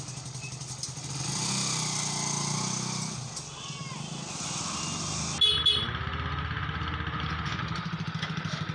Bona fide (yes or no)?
yes